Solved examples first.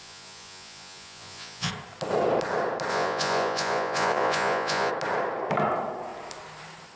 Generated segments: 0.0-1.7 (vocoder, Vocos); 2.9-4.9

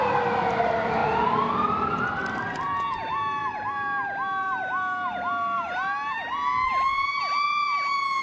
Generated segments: none

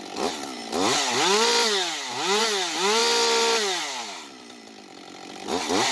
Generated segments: none